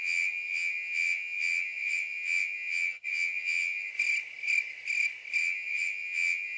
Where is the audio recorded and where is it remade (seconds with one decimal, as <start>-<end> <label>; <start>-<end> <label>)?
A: 0.0-3.9 remade; 3.9-5.4 recorded; 5.4-6.6 remade

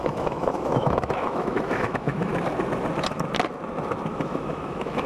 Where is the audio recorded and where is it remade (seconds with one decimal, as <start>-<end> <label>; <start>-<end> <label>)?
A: 0.0-2.3 remade; 2.3-4.1 recorded; 4.1-5.1 remade

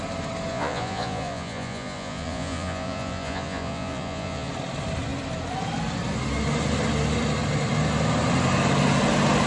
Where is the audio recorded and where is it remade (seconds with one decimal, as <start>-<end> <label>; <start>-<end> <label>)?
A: 0.0-0.5 recorded; 0.5-4.5 remade; 4.5-9.5 recorded

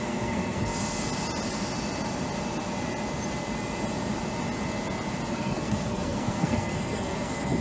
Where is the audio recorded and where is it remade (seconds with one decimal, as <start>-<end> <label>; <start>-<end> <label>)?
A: 0.0-0.7 remade; 0.7-5.3 recorded; 5.3-7.6 remade

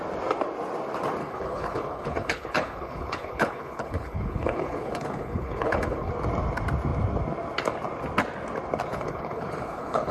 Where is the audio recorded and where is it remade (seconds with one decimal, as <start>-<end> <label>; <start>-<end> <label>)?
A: 0.0-1.2 recorded; 1.2-6.1 remade; 6.1-8.9 recorded; 8.9-10.1 remade